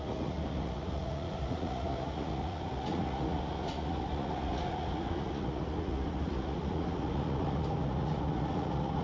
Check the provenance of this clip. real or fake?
fake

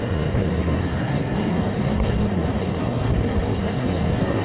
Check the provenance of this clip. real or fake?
fake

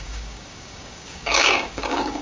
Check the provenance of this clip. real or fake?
fake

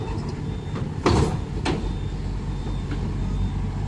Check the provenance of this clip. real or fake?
real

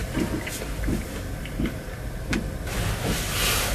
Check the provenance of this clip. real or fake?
real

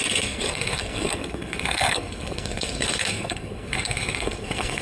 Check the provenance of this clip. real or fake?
fake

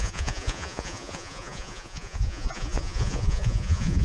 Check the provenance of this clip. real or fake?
fake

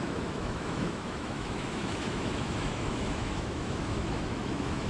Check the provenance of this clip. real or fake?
fake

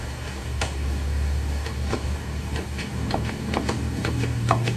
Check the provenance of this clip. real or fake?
fake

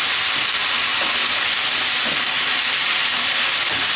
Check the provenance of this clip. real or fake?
real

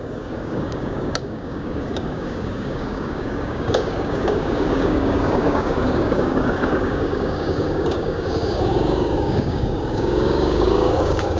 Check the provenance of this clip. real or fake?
fake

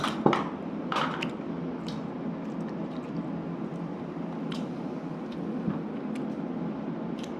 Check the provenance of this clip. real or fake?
real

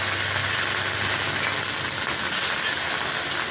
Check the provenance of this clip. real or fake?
real